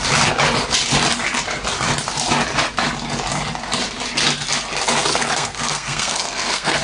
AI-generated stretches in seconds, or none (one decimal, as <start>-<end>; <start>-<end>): 5.1-6.8